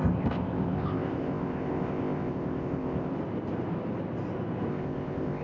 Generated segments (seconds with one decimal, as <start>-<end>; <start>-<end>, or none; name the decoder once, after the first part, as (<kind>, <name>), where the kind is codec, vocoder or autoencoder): 0.0-3.1 (codec, ZipCodec); 4.7-5.4